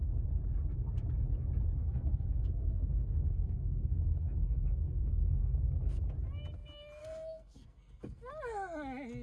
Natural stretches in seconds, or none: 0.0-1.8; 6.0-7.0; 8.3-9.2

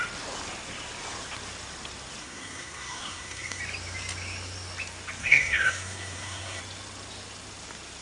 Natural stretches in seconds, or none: 0.0-2.2; 3.6-5.2; 6.6-8.0

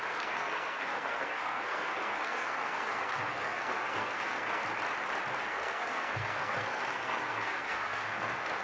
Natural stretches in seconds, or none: 4.6-5.4